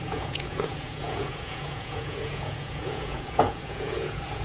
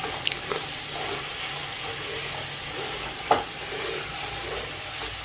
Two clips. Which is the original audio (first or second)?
second